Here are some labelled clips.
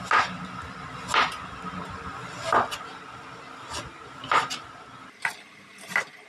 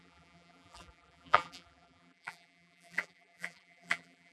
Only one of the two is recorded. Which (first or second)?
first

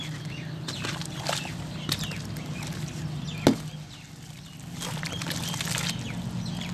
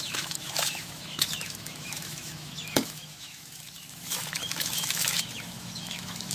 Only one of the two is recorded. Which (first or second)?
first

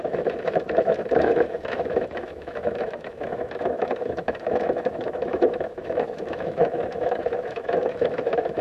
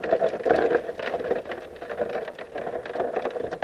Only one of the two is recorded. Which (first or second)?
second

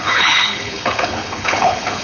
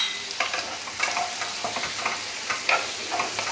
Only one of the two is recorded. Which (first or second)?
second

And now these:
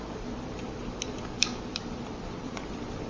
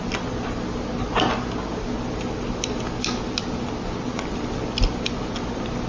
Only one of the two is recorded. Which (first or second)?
second